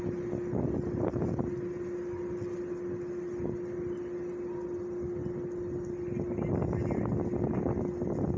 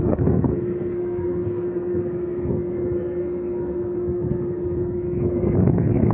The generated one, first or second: second